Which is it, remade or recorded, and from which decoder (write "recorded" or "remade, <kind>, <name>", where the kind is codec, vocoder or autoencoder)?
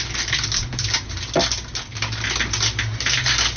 recorded